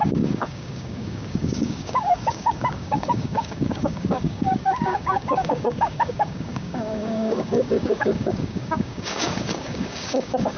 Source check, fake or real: fake